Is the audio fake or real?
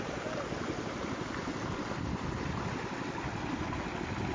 real